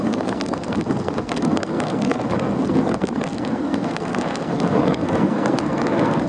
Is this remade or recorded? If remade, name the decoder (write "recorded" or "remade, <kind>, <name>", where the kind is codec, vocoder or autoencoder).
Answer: remade, codec, SNAC